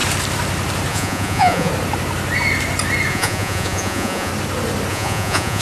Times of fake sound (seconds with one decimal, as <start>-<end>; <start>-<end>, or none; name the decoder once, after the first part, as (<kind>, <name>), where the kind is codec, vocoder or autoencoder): 0.9-1.7 (vocoder, Vocos); 3.1-4.3; 4.9-5.6

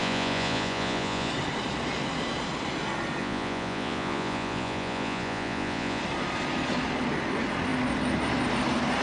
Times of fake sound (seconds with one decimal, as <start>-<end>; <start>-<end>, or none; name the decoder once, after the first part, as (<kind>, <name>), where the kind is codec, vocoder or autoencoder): 0.0-1.3 (vocoder, Vocos); 3.2-6.0